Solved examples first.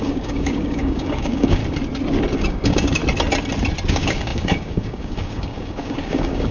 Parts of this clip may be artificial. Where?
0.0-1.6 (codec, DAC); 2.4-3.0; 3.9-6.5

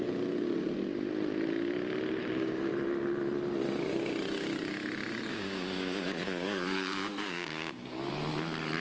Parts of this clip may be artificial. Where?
2.2-2.7 (codec, DAC); 5.3-8.0

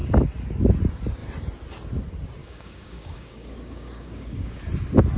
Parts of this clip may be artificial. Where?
2.4-4.6 (codec, DAC)

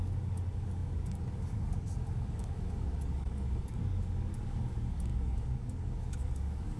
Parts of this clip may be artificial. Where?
0.0-6.8 (codec, DAC)

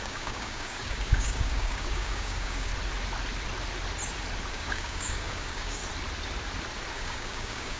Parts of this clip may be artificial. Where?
0.0-2.7 (codec, DAC); 4.5-5.8; 6.9-7.8

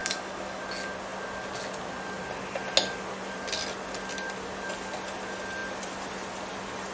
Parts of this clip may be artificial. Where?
0.0-0.6 (codec, DAC)

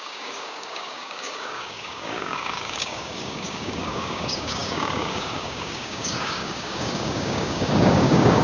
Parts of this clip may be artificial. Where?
0.0-8.4 (codec, DAC)